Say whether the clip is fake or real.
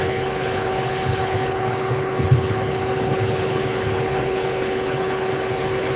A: fake